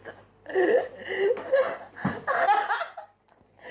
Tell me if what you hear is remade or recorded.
recorded